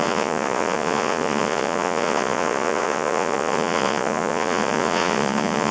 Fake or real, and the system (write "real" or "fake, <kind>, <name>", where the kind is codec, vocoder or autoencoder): fake, vocoder, Vocos